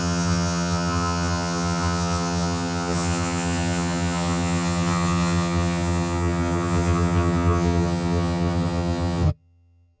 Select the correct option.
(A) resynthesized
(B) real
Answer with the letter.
A